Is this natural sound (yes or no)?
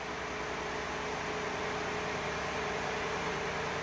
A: yes